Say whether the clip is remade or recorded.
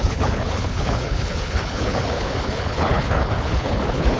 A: remade